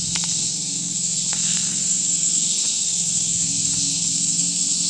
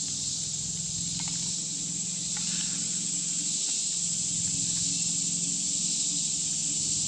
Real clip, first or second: second